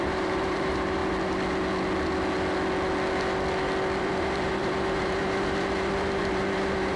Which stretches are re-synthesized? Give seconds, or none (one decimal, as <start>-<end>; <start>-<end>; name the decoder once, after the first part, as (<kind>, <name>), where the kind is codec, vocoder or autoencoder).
0.0-1.0 (vocoder, BigVGAN v2); 4.0-7.0